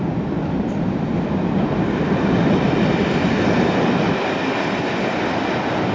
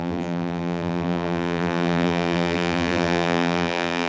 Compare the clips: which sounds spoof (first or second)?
second